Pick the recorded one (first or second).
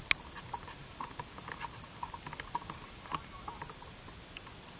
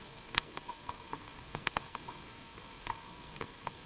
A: first